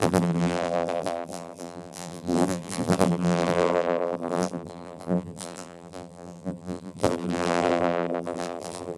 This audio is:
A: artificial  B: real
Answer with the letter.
A